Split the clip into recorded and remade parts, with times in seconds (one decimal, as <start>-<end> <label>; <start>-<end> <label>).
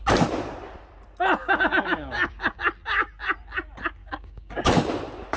0.0-1.4 recorded; 1.4-2.6 remade; 2.6-4.0 recorded; 4.0-4.7 remade; 4.7-5.4 recorded